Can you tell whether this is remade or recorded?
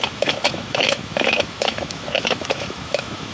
remade